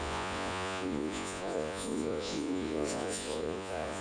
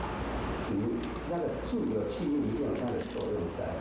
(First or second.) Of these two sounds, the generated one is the first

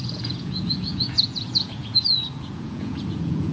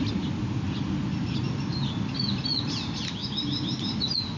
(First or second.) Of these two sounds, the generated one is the first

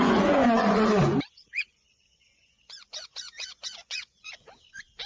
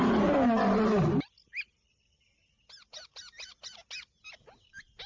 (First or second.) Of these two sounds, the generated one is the first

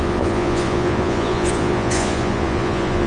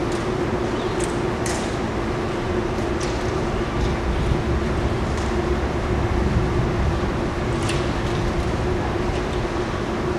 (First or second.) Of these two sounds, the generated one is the first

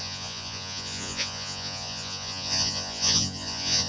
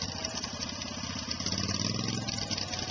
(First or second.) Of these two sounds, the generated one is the first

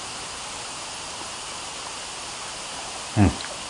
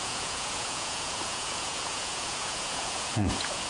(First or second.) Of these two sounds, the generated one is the second